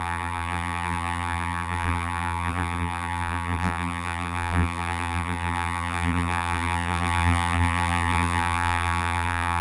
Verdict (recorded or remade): remade